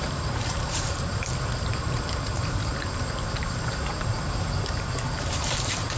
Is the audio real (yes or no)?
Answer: no